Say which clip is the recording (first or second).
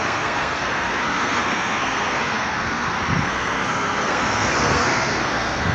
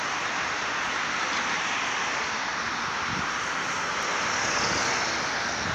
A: second